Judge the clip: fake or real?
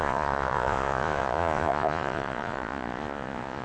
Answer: fake